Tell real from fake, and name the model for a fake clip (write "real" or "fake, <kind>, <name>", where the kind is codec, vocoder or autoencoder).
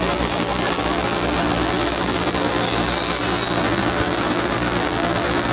fake, vocoder, BigVGAN v2